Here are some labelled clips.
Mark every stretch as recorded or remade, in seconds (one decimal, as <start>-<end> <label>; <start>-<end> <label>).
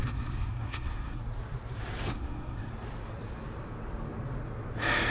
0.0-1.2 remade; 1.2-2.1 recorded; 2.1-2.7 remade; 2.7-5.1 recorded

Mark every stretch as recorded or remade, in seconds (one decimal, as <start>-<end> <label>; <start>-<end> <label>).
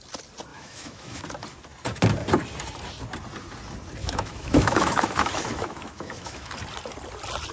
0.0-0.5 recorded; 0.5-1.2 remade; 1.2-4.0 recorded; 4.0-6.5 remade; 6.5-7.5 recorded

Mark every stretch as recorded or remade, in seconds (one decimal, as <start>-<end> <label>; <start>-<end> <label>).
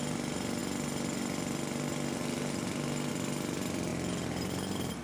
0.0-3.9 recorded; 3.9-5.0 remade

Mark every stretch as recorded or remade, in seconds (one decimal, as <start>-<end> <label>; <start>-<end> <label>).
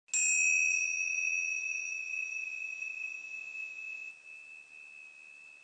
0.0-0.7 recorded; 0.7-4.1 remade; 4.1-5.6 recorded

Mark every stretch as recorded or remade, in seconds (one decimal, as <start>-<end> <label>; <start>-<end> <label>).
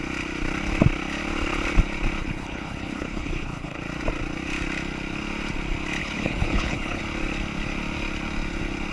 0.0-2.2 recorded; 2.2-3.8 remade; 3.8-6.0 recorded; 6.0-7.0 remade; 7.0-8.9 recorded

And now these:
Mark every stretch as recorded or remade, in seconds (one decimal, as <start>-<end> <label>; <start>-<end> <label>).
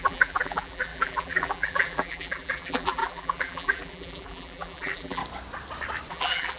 0.0-5.2 remade; 5.2-6.1 recorded; 6.1-6.6 remade